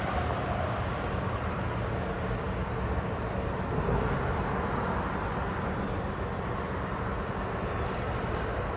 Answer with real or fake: real